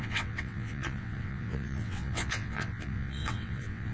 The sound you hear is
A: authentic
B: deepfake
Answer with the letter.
B